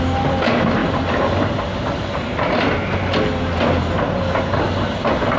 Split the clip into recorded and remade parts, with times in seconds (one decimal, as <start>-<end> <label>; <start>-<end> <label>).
0.0-5.4 recorded